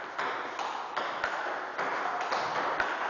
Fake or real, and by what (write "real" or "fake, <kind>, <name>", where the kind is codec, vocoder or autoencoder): real